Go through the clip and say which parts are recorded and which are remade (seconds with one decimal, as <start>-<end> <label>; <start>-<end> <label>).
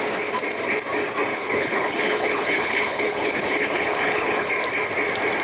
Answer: 0.0-1.3 recorded; 1.3-4.5 remade; 4.5-5.4 recorded